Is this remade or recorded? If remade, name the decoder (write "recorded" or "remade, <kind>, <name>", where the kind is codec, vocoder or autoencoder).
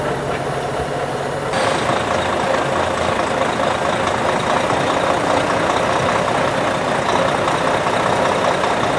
recorded